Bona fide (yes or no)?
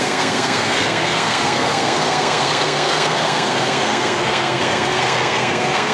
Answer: no